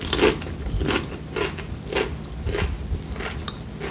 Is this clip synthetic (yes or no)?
no